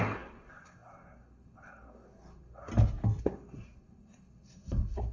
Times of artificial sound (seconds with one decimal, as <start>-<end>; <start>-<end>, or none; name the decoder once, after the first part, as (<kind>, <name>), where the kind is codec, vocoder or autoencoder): 0.0-2.7 (codec, SNAC); 3.2-5.1